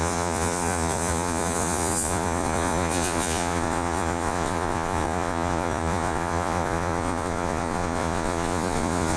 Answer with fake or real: fake